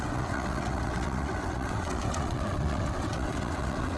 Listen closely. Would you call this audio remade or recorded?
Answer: remade